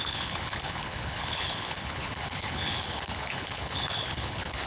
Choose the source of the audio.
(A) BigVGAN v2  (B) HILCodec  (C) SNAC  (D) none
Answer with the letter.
B